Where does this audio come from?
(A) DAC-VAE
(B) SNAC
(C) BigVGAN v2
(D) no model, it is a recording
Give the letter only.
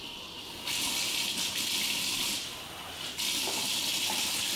D